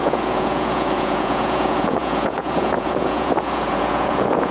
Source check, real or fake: fake